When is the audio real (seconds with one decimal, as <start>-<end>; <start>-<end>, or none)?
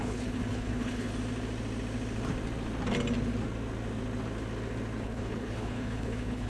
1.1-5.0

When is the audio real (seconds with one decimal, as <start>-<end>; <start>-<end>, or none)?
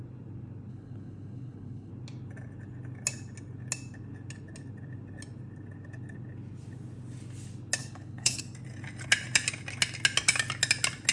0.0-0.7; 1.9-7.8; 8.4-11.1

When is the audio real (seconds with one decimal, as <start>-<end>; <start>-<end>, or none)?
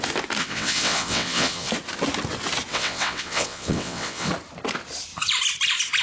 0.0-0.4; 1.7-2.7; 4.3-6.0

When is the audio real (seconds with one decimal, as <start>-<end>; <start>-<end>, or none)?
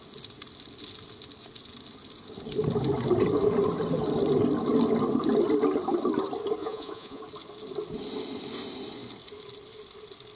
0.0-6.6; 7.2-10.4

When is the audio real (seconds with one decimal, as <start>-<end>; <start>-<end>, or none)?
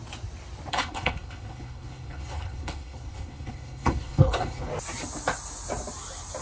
0.0-0.7; 4.7-6.4